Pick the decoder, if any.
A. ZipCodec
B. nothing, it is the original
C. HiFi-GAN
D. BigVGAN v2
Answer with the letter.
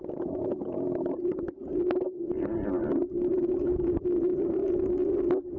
B